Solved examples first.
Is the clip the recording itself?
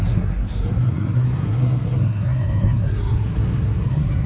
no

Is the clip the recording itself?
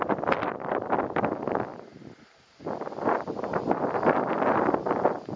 yes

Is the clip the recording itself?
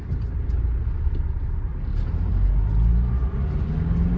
yes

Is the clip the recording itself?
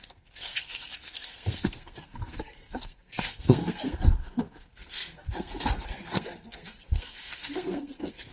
no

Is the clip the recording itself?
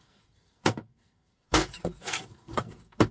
no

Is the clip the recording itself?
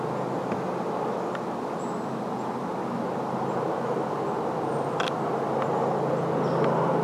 yes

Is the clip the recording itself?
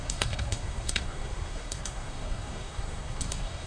no